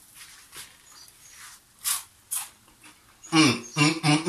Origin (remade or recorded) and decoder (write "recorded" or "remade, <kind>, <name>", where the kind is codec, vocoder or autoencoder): recorded